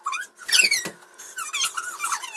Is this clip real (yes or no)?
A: yes